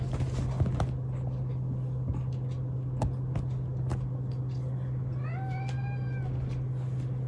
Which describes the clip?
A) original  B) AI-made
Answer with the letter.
A